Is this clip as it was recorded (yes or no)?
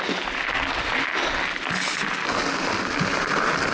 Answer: yes